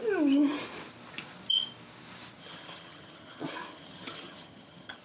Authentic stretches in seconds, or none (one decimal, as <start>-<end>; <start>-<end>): 0.0-2.4